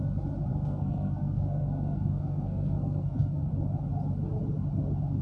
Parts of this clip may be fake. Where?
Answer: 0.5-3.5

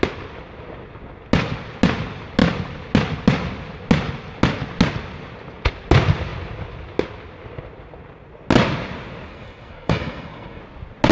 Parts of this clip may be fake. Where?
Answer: 9.3-10.6

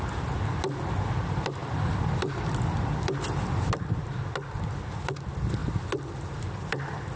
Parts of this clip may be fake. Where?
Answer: 1.6-3.1; 5.6-6.4

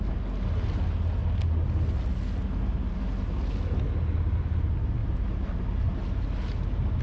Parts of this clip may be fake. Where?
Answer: none

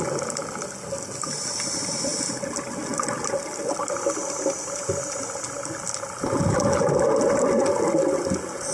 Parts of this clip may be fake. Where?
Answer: none

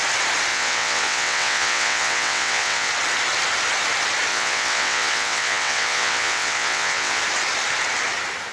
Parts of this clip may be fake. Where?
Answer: 0.5-2.9; 4.3-7.2